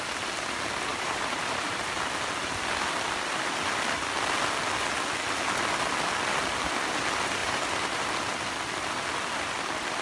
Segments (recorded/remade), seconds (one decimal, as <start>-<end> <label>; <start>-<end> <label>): 0.0-0.9 recorded; 0.9-1.8 remade; 1.8-7.4 recorded; 7.4-8.1 remade; 8.1-10.0 recorded